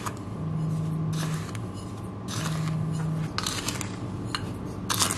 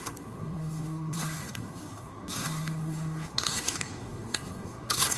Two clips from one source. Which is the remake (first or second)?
second